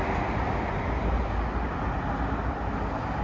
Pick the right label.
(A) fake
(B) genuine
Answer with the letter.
B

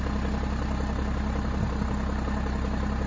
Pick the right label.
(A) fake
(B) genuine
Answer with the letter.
B